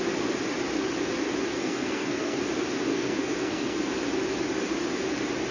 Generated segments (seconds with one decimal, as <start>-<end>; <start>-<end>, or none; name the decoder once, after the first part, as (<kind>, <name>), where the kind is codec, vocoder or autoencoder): 1.5-2.4 (codec, SNAC); 2.9-3.9